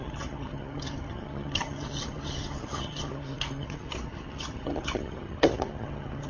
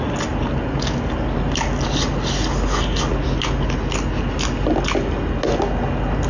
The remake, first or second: first